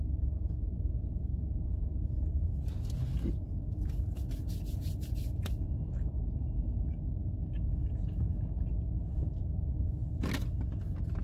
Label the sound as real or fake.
real